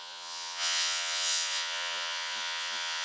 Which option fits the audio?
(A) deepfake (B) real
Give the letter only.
A